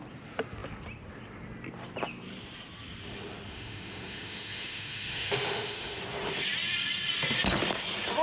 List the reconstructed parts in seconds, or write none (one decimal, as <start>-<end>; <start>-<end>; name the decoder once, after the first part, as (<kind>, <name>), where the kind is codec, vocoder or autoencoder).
3.5-6.0 (autoencoder, DAC-VAE)

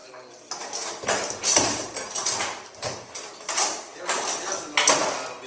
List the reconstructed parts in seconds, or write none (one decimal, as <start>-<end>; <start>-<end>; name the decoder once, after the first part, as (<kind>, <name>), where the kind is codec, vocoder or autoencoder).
3.3-3.9 (vocoder, BigVGAN v2)

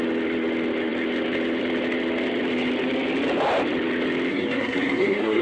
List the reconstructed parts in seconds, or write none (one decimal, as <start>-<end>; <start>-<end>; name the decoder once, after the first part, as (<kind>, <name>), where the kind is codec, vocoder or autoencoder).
4.3-5.4 (codec, SNAC)

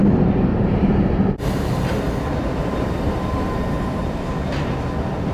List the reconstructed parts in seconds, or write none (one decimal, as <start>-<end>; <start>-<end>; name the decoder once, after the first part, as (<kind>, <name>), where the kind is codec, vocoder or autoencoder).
0.5-2.0 (vocoder, BigVGAN v2); 2.6-4.3

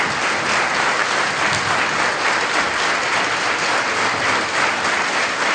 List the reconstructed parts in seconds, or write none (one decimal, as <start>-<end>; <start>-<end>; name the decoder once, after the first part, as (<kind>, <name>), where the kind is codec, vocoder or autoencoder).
none

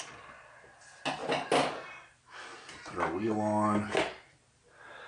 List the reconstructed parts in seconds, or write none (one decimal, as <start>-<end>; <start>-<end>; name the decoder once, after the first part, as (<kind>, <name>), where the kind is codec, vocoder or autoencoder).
none